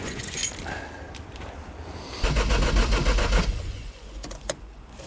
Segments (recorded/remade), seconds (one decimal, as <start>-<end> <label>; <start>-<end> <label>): 0.0-0.4 remade; 0.4-3.5 recorded; 3.5-5.1 remade